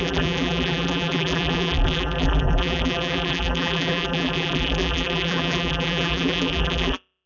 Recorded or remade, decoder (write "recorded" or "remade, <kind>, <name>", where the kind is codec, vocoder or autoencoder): remade, vocoder, BigVGAN v2